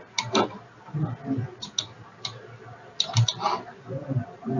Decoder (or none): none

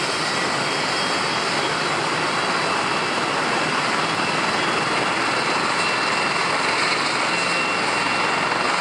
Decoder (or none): none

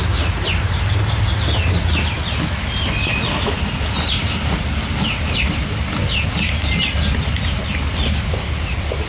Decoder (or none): none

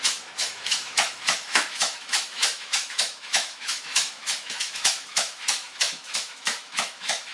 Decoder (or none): autoencoder, DAC-VAE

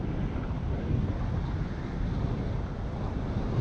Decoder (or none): none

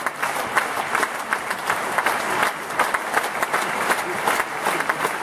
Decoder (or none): none